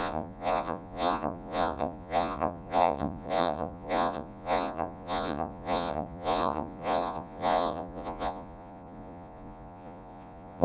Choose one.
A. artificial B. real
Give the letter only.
A